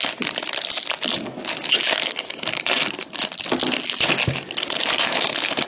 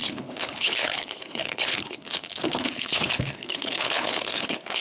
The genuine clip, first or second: first